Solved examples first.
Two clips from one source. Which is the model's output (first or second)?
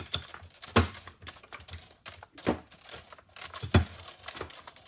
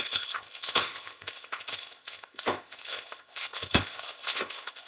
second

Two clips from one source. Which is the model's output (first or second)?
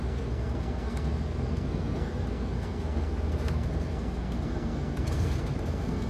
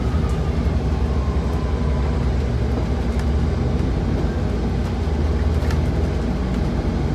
first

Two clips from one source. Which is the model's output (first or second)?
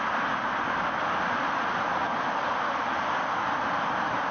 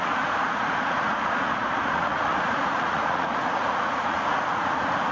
second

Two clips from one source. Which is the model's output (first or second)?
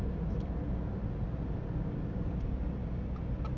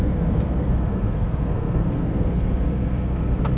second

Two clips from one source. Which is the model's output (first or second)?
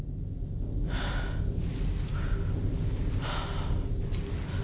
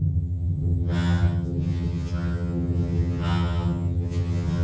second